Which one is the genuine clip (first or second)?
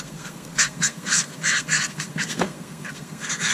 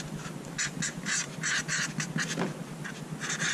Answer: second